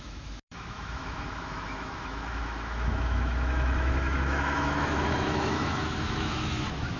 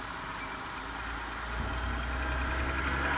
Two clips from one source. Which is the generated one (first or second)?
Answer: first